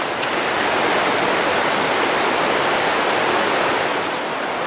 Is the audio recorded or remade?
recorded